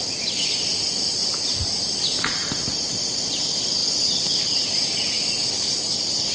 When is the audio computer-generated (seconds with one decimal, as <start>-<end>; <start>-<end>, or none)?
none